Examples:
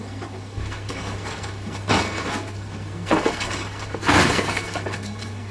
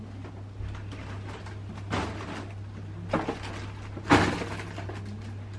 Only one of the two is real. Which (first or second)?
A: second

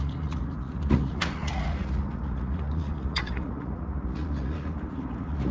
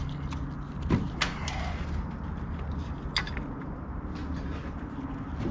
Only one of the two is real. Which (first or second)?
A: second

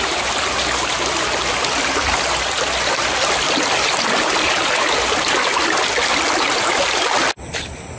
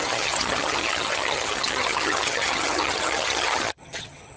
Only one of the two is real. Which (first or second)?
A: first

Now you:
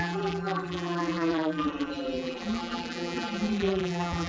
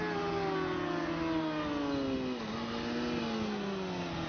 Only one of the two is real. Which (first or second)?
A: second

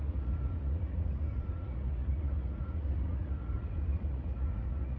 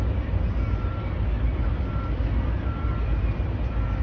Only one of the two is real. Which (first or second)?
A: second